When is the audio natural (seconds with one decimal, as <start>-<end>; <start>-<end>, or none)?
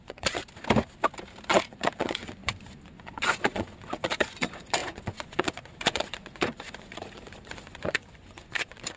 0.4-1.5